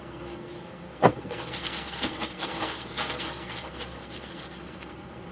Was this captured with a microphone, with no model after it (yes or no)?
no